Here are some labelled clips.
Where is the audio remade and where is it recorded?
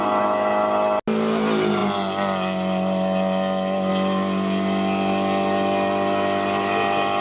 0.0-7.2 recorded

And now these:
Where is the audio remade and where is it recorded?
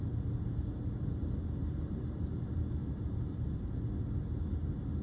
0.0-1.6 recorded; 1.6-2.3 remade; 2.3-2.8 recorded; 2.8-3.8 remade; 3.8-5.0 recorded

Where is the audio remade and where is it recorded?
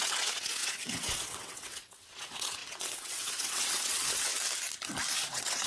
0.0-4.3 remade; 4.3-5.1 recorded; 5.1-5.7 remade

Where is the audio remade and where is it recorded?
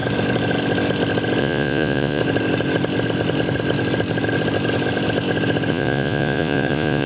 0.0-1.4 recorded; 1.4-2.2 remade; 2.2-5.7 recorded; 5.7-7.1 remade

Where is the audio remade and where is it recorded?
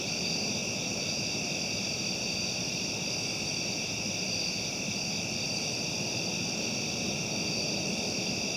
0.0-0.6 recorded; 0.6-1.4 remade; 1.4-8.6 recorded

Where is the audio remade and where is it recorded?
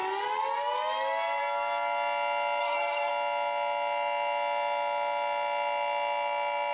0.0-2.6 recorded; 2.6-3.1 remade; 3.1-6.7 recorded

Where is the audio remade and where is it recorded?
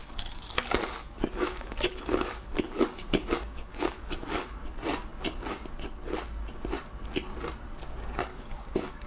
0.0-4.6 remade; 4.6-8.3 recorded; 8.3-9.1 remade